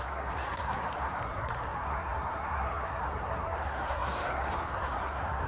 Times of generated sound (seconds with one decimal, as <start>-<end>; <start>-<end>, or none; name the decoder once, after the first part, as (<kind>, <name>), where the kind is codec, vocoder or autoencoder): 0.0-5.5 (codec, SNAC)